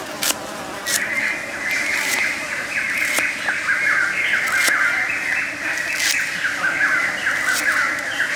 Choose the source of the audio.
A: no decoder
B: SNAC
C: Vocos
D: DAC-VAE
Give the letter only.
A